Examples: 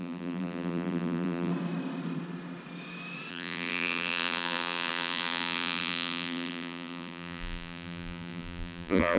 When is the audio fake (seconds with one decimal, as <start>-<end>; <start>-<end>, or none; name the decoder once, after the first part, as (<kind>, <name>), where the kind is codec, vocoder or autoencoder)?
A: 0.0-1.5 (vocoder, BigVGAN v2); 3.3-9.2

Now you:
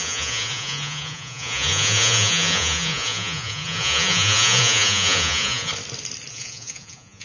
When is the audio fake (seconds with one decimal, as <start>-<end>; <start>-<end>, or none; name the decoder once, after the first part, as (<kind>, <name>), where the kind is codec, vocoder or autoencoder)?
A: 0.0-5.7 (vocoder, Vocos); 6.3-7.2

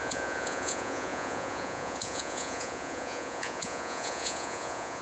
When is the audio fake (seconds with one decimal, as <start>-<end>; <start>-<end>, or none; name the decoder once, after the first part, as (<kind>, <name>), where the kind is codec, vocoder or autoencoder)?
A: 0.0-5.0 (vocoder, Vocos)

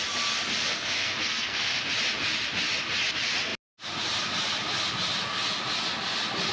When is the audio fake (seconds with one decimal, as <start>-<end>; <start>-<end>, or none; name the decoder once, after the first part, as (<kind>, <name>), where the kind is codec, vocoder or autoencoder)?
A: 0.7-1.8 (codec, SNAC)